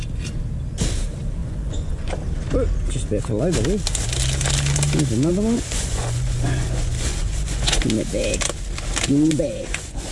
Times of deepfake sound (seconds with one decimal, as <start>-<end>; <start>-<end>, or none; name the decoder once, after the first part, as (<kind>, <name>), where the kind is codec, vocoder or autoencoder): 1.4-2.1 (vocoder, Vocos); 5.3-7.8; 9.1-10.1